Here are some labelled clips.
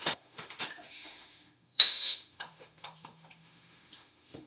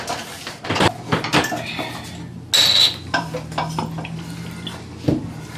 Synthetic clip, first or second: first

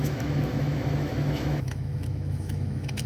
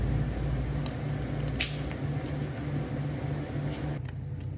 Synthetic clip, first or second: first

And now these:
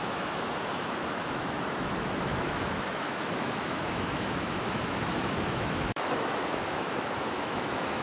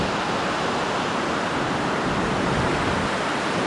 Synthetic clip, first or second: first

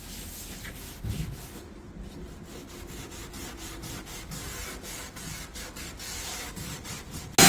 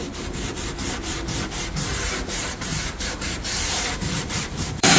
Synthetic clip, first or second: second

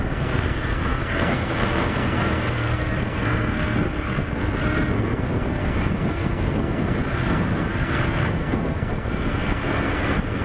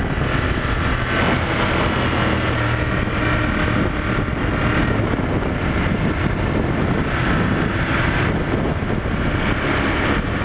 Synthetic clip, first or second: first